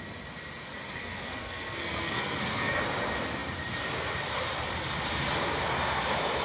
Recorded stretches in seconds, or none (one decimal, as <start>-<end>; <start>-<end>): 0.0-0.7; 2.8-6.4